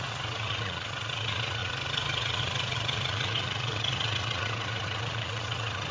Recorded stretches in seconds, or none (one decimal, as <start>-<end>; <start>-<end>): none